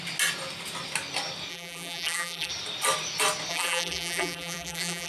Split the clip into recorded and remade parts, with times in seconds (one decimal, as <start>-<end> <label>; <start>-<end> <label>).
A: 0.0-1.5 recorded; 1.5-2.5 remade; 2.5-3.5 recorded; 3.5-5.1 remade